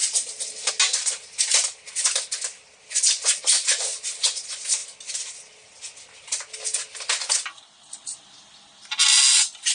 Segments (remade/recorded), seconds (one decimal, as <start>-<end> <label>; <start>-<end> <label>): 0.0-9.7 recorded